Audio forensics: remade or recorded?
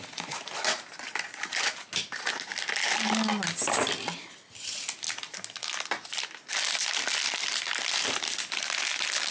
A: recorded